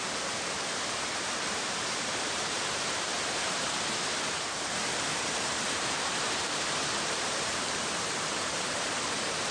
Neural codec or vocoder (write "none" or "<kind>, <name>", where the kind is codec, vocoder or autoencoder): vocoder, BigVGAN v2